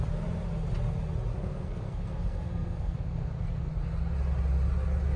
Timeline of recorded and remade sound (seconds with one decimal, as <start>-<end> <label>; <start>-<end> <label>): 0.0-1.3 recorded; 1.3-3.7 remade; 3.7-5.2 recorded